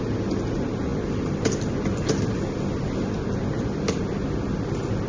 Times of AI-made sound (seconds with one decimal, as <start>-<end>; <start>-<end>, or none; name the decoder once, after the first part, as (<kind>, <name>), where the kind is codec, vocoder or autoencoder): none